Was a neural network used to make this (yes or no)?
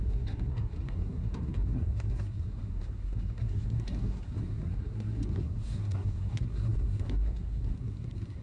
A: yes